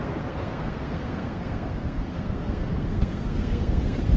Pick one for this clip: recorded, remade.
remade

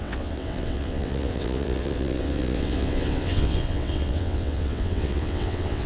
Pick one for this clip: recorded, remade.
remade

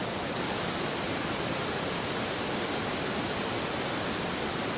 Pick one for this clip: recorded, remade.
recorded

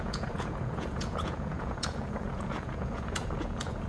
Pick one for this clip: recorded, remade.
remade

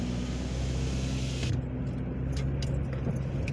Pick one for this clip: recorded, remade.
recorded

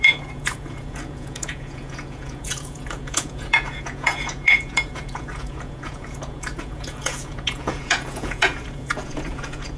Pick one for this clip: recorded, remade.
remade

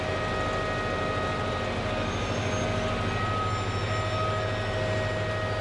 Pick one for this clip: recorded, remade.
recorded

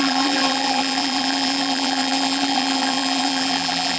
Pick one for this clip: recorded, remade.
remade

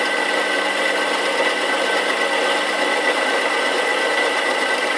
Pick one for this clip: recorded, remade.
recorded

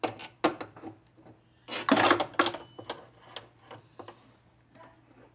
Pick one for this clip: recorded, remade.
recorded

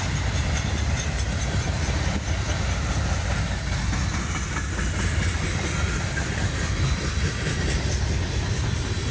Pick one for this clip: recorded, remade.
recorded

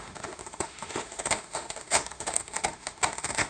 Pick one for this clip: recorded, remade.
remade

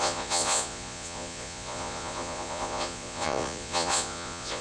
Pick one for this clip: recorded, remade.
remade